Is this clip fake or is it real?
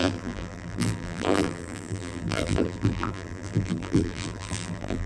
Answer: fake